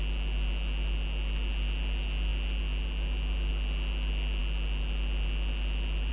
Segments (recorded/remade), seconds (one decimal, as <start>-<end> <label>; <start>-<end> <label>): 0.0-6.1 recorded